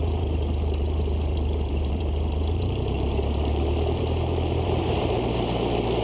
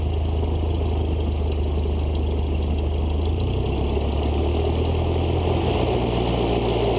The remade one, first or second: first